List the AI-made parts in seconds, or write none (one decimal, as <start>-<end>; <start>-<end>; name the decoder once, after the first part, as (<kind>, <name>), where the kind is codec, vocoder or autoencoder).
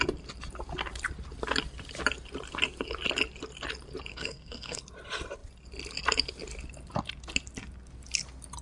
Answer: 4.1-4.8 (codec, SNAC)